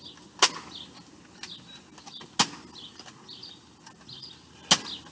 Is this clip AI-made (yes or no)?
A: no